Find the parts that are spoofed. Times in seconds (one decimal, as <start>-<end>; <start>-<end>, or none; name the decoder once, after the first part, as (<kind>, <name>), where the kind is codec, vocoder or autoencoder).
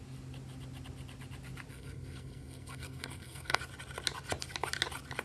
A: 1.7-3.6 (codec, SNAC)